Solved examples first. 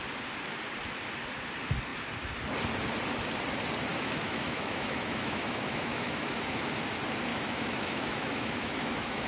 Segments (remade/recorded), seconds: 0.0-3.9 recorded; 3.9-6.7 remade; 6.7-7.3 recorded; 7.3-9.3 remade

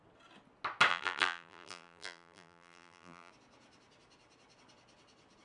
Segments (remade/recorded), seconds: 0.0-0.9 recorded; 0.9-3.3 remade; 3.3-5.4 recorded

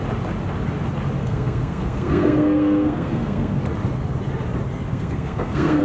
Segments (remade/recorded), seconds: 0.0-1.2 recorded; 1.2-3.6 remade; 3.6-4.9 recorded; 4.9-5.8 remade